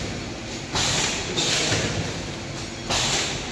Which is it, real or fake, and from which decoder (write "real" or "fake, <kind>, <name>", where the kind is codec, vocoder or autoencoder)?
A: real